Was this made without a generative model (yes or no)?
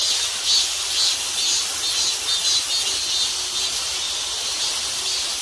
yes